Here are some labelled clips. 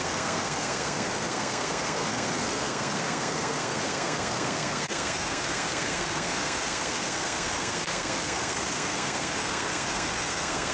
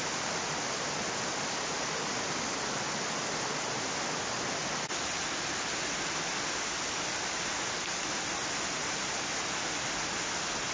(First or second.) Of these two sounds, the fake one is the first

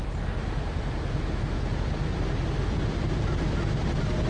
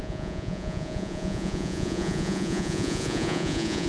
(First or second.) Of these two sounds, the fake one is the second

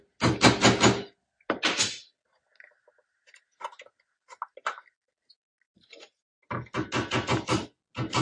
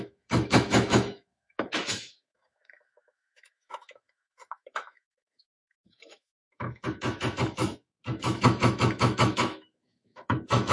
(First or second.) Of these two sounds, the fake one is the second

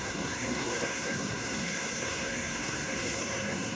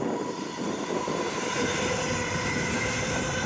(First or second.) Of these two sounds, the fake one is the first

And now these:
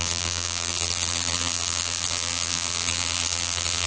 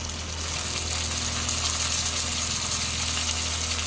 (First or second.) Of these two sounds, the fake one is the first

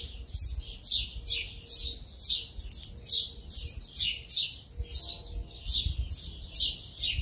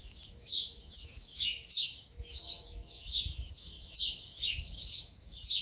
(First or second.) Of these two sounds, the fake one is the second